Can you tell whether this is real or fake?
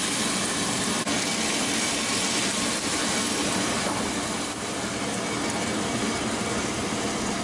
real